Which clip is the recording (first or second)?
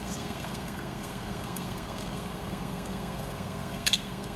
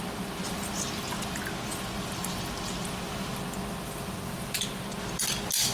second